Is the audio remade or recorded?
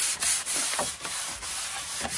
remade